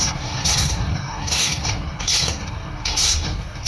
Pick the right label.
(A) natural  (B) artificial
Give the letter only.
B